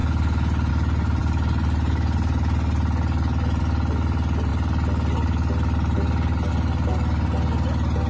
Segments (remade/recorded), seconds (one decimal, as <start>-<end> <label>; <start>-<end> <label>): 0.0-8.1 recorded